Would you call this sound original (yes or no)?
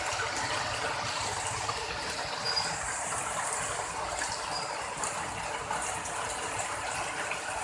yes